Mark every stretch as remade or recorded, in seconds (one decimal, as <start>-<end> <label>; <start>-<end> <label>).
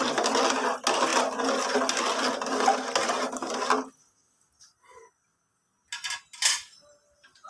0.0-7.5 recorded